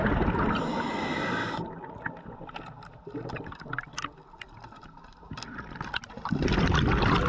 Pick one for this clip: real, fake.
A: real